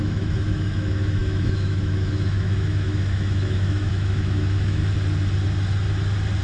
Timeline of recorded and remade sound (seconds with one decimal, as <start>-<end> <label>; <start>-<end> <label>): 0.0-4.8 remade; 4.8-6.4 recorded